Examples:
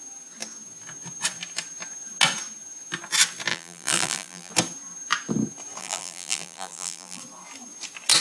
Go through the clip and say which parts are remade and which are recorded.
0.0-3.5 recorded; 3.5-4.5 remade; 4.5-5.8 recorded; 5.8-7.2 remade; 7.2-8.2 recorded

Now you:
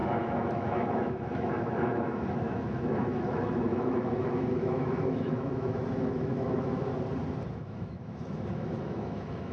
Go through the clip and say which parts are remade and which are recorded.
0.0-6.9 remade; 6.9-7.5 recorded; 7.5-9.5 remade

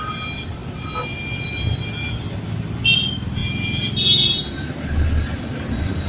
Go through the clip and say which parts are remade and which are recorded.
0.0-6.1 recorded

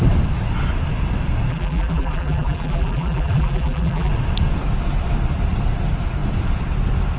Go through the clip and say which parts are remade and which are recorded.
0.0-1.5 recorded; 1.5-4.1 remade; 4.1-7.2 recorded

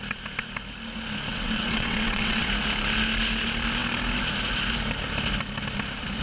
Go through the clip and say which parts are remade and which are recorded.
0.0-1.3 recorded; 1.3-2.5 remade; 2.5-6.2 recorded